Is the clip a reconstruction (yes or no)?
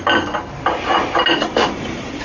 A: no